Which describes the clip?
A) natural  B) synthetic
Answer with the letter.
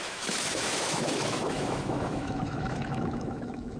B